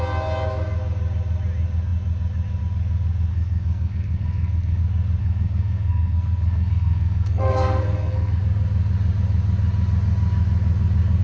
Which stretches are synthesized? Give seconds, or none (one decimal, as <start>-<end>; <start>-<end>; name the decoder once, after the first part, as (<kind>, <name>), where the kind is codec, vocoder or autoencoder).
3.3-4.8 (codec, SNAC); 5.2-8.4